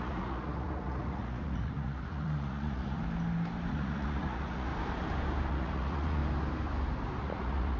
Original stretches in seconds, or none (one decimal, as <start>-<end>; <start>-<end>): 3.0-3.7; 4.7-5.5; 6.2-7.2